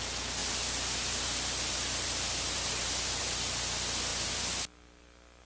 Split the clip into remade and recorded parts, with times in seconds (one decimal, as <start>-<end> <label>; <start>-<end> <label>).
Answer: 0.0-5.4 recorded